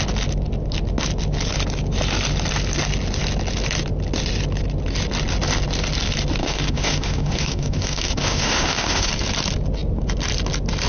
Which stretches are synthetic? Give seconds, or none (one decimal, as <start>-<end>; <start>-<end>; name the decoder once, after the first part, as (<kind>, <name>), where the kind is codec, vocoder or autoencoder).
6.4-9.1 (autoencoder, DAC-VAE)